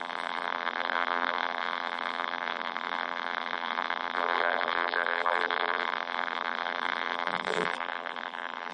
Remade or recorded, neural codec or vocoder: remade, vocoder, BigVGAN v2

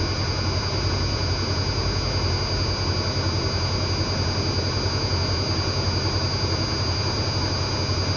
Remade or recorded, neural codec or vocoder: recorded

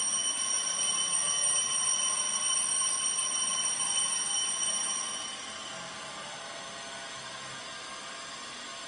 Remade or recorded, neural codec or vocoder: recorded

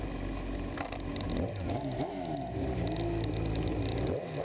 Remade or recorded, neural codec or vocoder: recorded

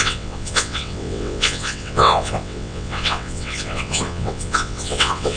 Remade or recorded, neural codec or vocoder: remade, vocoder, WaveNeXt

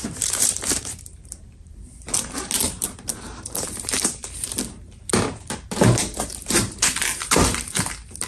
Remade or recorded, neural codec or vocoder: remade, vocoder, BigVGAN v2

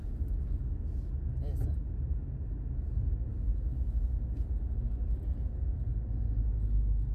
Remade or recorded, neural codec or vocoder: recorded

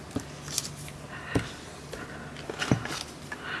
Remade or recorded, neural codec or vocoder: recorded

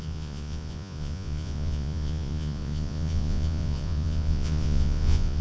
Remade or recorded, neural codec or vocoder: remade, vocoder, Vocos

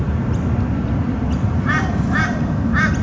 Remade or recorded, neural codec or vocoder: remade, vocoder, BigVGAN v2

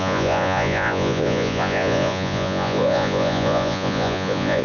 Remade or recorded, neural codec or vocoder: remade, vocoder, Vocos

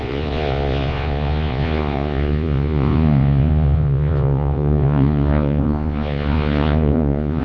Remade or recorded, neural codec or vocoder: remade, vocoder, Vocos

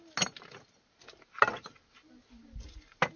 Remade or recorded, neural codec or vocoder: recorded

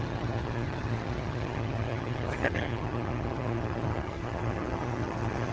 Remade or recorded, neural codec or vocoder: remade, vocoder, HiFi-GAN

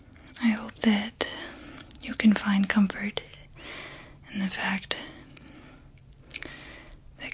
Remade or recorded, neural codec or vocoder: recorded